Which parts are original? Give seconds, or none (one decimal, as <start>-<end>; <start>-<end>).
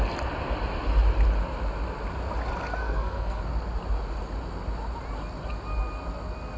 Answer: 0.0-2.8; 3.4-6.6